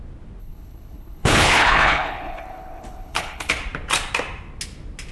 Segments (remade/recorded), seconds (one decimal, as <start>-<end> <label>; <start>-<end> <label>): 0.0-0.4 recorded; 0.4-3.5 remade; 3.5-5.1 recorded